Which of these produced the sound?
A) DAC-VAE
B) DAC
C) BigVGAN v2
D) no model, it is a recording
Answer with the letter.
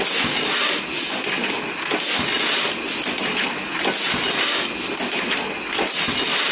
D